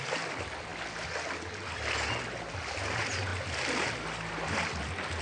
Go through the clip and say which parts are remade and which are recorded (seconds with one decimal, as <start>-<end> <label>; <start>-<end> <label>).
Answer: 0.0-5.2 recorded